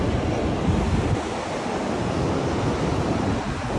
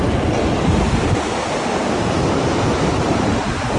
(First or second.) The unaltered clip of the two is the first